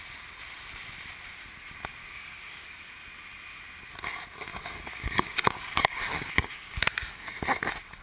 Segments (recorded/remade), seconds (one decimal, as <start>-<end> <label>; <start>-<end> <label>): 0.0-2.0 recorded; 2.0-2.8 remade; 2.8-4.5 recorded; 4.5-7.3 remade; 7.3-8.0 recorded